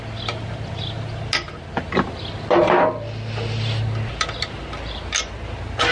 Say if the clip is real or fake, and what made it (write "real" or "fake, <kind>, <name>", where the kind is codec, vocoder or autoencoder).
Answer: real